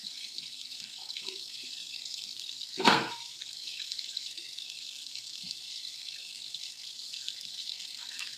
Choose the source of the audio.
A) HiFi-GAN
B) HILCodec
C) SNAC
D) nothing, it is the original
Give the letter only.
C